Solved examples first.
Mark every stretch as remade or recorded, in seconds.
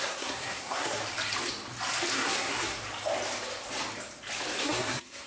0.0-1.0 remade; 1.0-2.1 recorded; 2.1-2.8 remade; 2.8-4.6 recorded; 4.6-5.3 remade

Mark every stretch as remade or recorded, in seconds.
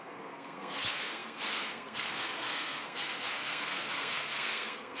0.0-5.0 remade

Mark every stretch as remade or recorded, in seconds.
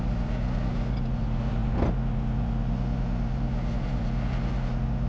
0.0-5.1 recorded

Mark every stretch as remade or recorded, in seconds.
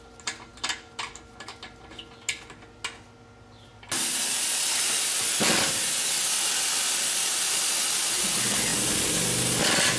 0.0-10.0 recorded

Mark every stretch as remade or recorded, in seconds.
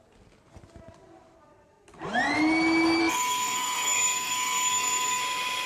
0.0-3.0 recorded; 3.0-5.2 remade; 5.2-5.7 recorded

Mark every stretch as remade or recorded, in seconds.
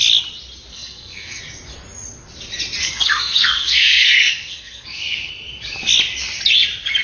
0.0-0.7 recorded; 0.7-1.4 remade; 1.4-2.8 recorded; 2.8-5.3 remade; 5.3-7.0 recorded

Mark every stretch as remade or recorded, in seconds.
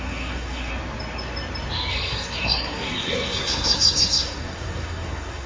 0.0-0.7 remade; 0.7-1.9 recorded; 1.9-5.5 remade